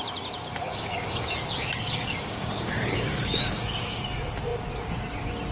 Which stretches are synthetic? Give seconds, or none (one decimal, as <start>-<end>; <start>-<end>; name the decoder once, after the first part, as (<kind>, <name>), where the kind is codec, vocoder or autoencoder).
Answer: 0.7-4.0 (codec, DAC)